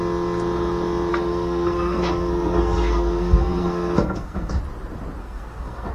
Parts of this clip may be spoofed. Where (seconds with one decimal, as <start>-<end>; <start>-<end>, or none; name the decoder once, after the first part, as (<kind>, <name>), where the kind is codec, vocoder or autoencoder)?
1.1-4.6 (codec, SNAC); 5.2-5.9